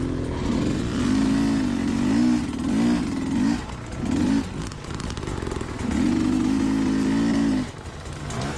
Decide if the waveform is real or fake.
real